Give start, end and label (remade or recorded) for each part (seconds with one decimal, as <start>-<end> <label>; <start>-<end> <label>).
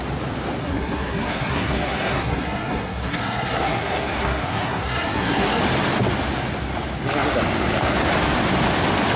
0.0-0.6 recorded; 0.6-5.6 remade; 5.6-9.2 recorded